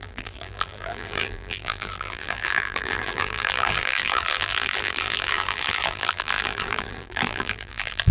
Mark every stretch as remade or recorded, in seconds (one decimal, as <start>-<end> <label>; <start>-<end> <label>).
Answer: 0.0-8.1 remade